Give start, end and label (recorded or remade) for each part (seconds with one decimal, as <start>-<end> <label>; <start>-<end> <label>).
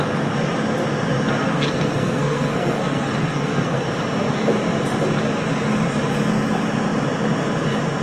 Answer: 0.0-1.4 recorded; 1.4-3.8 remade; 3.8-8.0 recorded